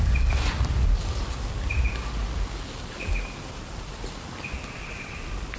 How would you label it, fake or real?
real